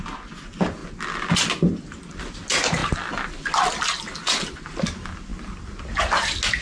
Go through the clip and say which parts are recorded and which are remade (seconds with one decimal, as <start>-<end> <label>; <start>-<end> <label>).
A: 0.0-6.6 recorded